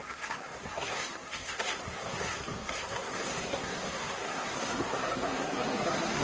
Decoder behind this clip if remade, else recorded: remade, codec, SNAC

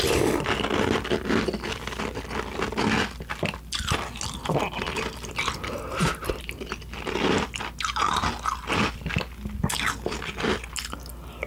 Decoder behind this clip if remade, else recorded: recorded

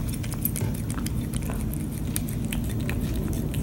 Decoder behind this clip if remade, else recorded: recorded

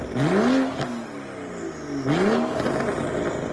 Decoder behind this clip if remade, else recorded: recorded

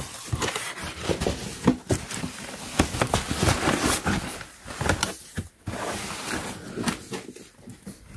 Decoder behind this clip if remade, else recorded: recorded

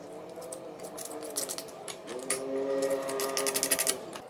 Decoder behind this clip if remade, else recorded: recorded